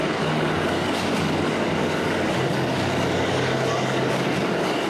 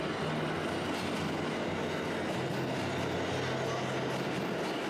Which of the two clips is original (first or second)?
second